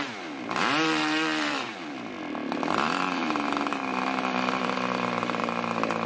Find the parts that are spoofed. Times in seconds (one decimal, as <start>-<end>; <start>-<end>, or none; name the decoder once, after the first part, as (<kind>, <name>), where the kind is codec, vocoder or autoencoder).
0.0-3.8 (vocoder, BigVGAN v2); 4.6-5.4